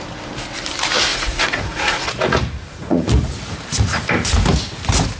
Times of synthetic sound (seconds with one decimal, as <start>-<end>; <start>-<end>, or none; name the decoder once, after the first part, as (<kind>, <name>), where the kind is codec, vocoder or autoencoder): 1.1-3.1 (vocoder, Vocos)